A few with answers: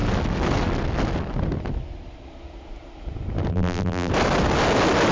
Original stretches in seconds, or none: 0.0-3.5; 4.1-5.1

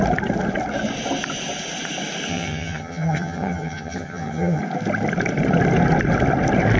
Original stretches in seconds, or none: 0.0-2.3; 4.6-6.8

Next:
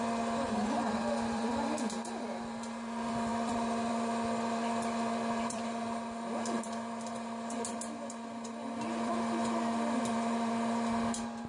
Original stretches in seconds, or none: none

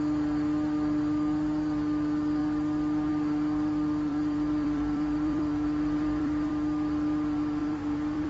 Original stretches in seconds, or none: 0.0-4.1; 6.5-7.6

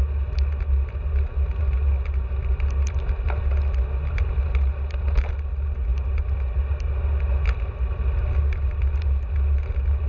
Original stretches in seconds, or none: 0.0-10.1

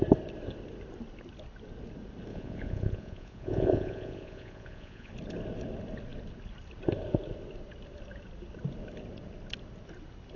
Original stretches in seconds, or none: 0.0-2.3; 5.1-10.4

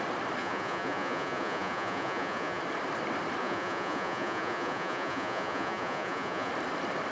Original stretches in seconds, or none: 0.0-0.4; 2.6-3.4; 6.5-7.1

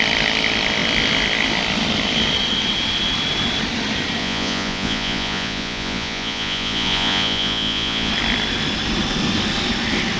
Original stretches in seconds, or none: 0.0-4.2; 8.1-10.2